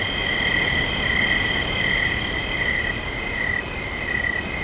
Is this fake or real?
real